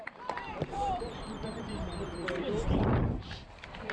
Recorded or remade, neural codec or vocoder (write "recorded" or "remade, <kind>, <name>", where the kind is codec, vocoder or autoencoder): remade, vocoder, BigVGAN v2